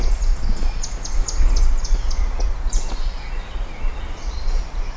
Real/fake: fake